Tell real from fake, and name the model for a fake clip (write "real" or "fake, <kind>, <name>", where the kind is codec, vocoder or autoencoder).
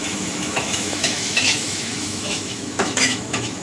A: fake, autoencoder, DAC-VAE